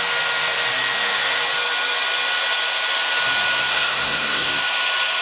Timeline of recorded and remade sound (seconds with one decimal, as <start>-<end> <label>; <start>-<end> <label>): 0.0-3.7 recorded; 3.7-4.5 remade; 4.5-5.2 recorded